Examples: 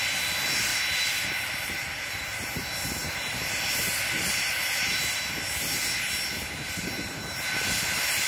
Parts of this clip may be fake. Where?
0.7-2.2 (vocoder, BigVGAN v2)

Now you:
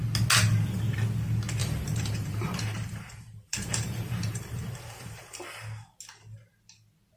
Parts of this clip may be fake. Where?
1.6-5.5 (vocoder, BigVGAN v2)

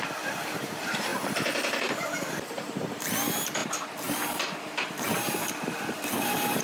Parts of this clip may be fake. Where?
0.0-6.6 (vocoder, BigVGAN v2)

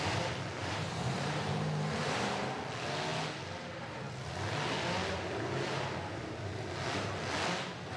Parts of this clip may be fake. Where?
0.6-2.6 (vocoder, BigVGAN v2)

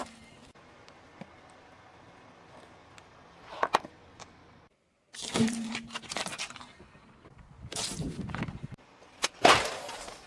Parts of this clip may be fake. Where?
2.8-5.1 (vocoder, BigVGAN v2)

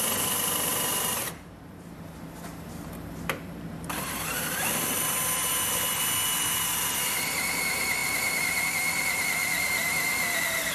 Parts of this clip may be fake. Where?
0.7-5.5 (vocoder, BigVGAN v2); 8.0-8.6

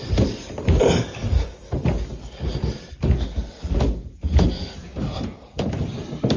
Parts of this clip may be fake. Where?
0.8-1.6 (vocoder, BigVGAN v2); 5.4-6.4

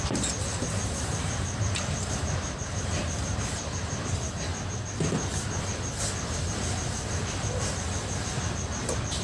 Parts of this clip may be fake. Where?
0.0-4.5 (vocoder, BigVGAN v2); 6.5-9.2